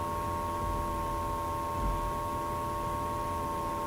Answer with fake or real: real